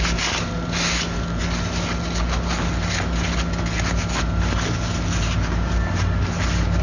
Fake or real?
real